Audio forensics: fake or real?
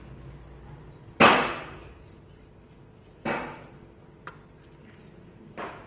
real